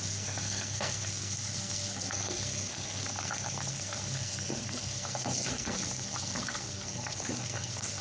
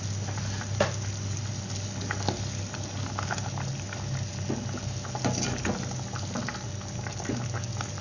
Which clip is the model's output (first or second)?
first